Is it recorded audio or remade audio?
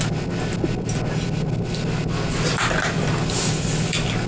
recorded